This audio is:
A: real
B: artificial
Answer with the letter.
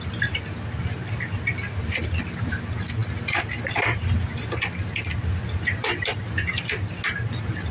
A